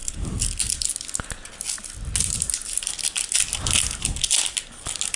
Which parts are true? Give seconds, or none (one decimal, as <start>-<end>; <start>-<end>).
0.0-5.2